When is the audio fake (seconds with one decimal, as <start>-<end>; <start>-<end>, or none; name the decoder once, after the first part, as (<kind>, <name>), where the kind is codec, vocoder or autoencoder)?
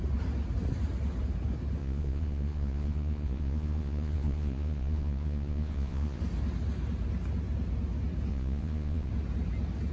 1.8-6.2 (vocoder, Vocos); 8.3-9.1